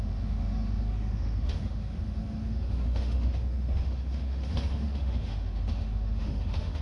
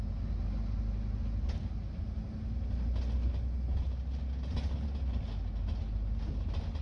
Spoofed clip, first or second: first